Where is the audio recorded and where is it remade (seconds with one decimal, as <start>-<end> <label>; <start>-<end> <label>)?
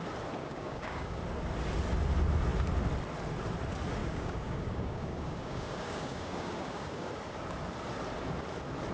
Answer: 0.0-0.4 recorded; 0.4-1.2 remade; 1.2-4.0 recorded; 4.0-7.1 remade; 7.1-8.9 recorded